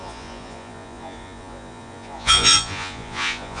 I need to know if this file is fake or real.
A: fake